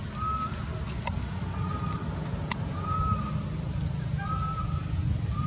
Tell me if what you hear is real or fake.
real